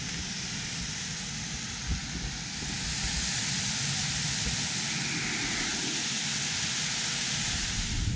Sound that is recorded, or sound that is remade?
recorded